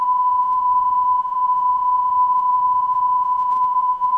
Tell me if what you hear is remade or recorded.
remade